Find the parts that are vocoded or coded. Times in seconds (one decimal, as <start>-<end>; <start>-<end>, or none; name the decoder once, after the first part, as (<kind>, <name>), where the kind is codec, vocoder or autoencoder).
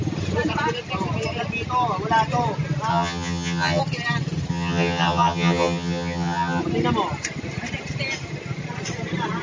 2.9-3.8 (vocoder, HiFi-GAN); 4.5-6.6